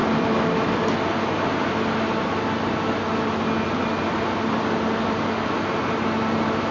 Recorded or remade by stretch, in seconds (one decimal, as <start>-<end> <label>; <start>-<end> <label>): 0.0-6.7 recorded